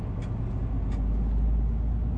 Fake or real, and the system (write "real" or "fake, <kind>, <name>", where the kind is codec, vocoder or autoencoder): real